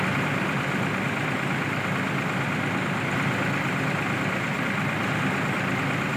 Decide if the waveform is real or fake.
real